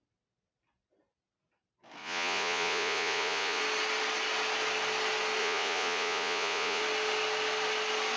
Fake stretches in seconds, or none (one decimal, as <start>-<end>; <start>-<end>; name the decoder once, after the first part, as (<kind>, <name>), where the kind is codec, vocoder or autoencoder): 2.0-3.6 (vocoder, Vocos); 5.4-6.8